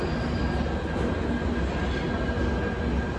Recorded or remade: recorded